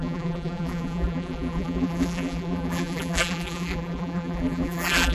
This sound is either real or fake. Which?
fake